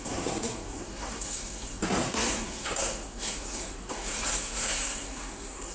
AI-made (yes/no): yes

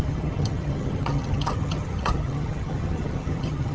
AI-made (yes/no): yes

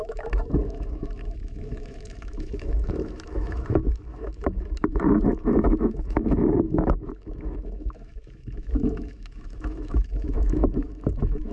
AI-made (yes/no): yes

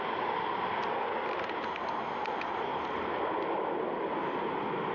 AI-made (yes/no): no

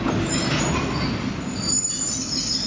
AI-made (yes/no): no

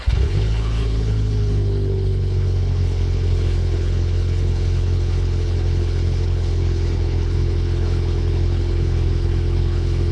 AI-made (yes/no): yes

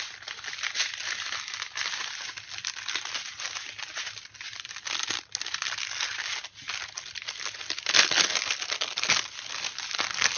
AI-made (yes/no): no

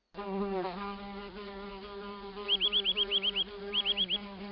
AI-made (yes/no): no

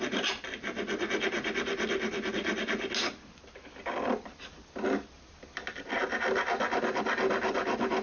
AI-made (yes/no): no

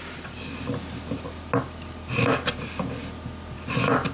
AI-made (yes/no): no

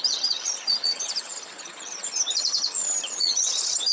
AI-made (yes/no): yes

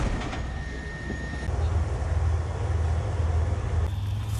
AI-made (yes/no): no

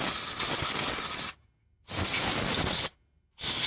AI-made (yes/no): no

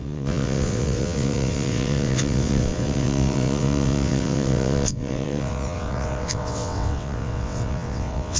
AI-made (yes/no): yes